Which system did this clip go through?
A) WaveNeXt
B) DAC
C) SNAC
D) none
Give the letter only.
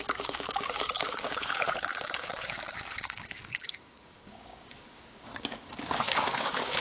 B